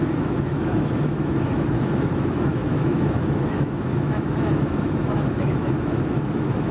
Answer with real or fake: fake